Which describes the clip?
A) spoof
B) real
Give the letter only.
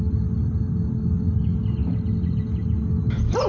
B